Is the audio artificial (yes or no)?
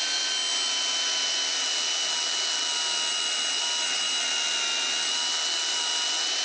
no